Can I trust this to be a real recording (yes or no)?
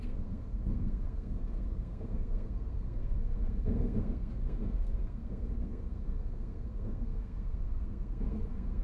no